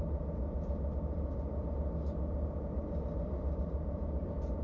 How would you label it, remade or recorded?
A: recorded